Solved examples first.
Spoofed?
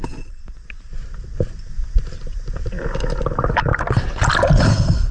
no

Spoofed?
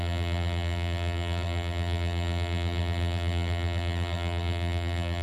yes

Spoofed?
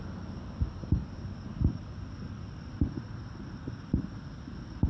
yes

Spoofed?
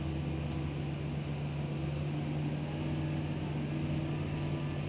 no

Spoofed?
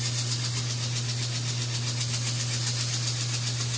no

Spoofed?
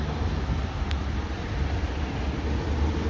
no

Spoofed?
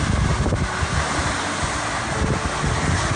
no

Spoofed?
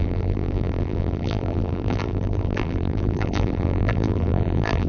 yes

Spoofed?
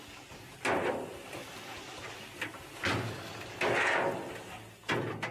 no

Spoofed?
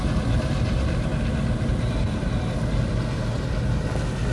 no